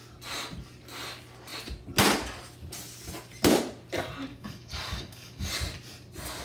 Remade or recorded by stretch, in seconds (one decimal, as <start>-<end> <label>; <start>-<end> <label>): 0.0-4.3 recorded; 4.3-5.5 remade; 5.5-6.4 recorded

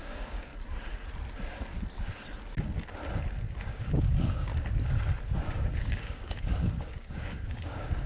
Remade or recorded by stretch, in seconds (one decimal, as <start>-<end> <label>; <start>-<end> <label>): 0.0-0.5 remade; 0.5-3.7 recorded; 3.7-4.5 remade; 4.5-5.3 recorded; 5.3-8.1 remade

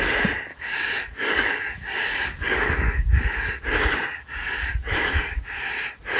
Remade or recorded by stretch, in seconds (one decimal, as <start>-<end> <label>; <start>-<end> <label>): 0.0-0.5 recorded; 0.5-3.6 remade; 3.6-4.2 recorded; 4.2-5.4 remade; 5.4-6.2 recorded